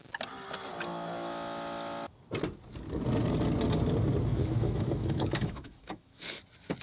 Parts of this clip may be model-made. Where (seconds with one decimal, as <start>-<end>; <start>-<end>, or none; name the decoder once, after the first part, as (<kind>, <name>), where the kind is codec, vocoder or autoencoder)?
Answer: 4.3-6.2 (autoencoder, DAC-VAE)